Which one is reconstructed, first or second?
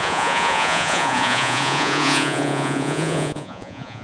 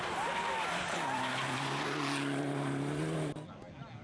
first